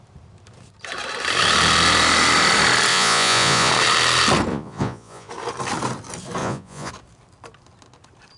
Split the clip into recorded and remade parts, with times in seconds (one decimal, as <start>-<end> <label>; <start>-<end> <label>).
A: 0.0-2.9 recorded; 2.9-3.7 remade; 3.7-4.5 recorded; 4.5-5.3 remade; 5.3-6.4 recorded; 6.4-6.9 remade; 6.9-8.4 recorded